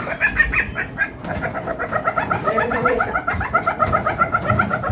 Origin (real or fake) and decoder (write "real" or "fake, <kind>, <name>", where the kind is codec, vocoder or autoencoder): fake, vocoder, BigVGAN v2